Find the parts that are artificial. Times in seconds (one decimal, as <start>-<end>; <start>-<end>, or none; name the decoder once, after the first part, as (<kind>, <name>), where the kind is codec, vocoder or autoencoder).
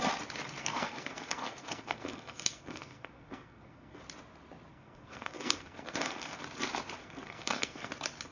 0.6-4.0 (codec, SNAC); 4.7-6.4; 7.0-7.9